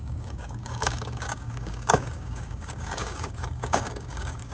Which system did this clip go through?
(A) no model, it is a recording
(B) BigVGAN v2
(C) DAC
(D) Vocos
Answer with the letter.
C